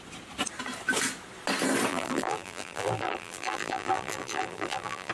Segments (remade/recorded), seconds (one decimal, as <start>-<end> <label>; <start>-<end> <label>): 0.0-1.9 recorded; 1.9-5.1 remade